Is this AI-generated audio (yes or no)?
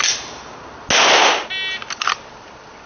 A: no